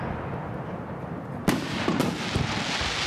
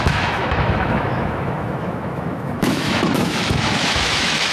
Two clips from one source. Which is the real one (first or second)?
first